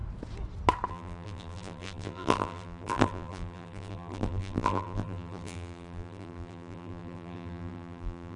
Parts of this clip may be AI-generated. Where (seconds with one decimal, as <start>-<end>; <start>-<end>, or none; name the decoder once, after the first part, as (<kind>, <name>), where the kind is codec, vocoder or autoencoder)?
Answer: 0.9-8.4 (vocoder, BigVGAN v2)